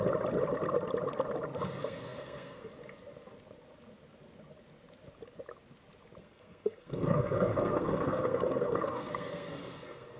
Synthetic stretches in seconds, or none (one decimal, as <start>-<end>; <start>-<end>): 1.8-2.7; 6.2-10.2

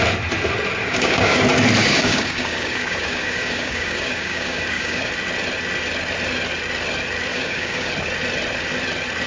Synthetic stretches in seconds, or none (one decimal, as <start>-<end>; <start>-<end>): 0.8-1.4; 1.8-5.1; 7.3-7.9

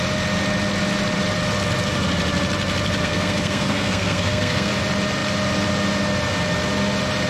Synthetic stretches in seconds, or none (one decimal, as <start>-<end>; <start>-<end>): 3.0-4.7

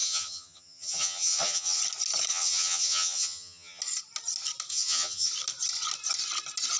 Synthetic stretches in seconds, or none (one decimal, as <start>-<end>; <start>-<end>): 0.0-1.8; 2.3-3.8; 4.7-5.3

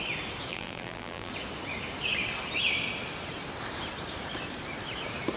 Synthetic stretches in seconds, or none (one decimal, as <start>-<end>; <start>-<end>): 0.5-1.3